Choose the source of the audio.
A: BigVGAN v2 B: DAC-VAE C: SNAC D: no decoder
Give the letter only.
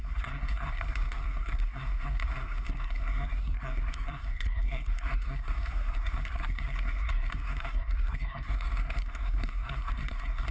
C